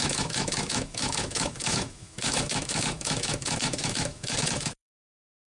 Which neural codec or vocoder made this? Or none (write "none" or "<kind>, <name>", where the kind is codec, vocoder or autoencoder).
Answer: autoencoder, DAC-VAE